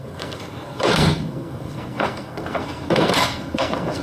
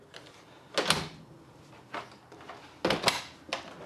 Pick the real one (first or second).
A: second